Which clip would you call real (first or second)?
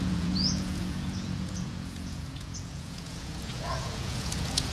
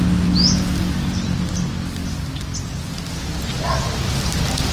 second